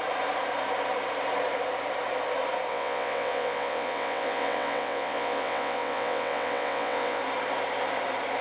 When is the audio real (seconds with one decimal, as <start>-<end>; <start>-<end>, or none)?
0.0-2.7; 7.2-8.4